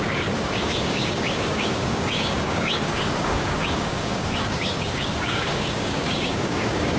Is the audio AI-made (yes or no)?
yes